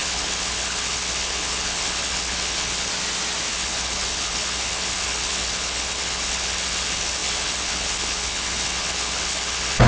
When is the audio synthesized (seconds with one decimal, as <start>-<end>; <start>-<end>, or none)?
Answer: 0.0-2.9; 3.5-9.9